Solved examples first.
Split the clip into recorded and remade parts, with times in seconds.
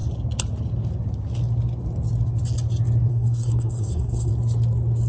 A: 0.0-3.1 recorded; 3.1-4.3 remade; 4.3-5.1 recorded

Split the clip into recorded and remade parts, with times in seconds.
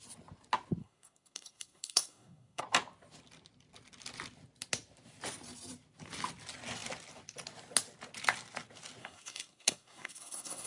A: 0.0-0.8 recorded; 0.8-2.6 remade; 2.6-9.0 recorded; 9.0-10.7 remade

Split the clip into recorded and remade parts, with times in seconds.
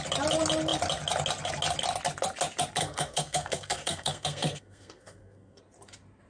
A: 0.0-2.8 recorded; 2.8-5.6 remade; 5.6-6.3 recorded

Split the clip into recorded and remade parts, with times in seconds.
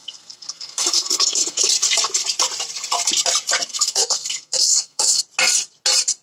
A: 0.0-1.7 remade; 1.7-3.7 recorded; 3.7-5.2 remade; 5.2-6.2 recorded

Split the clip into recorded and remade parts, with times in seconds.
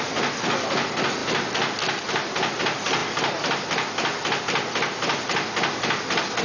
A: 0.0-6.4 recorded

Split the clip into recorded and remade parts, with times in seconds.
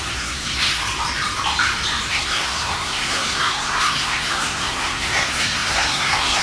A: 0.0-0.8 remade; 0.8-2.1 recorded; 2.1-6.4 remade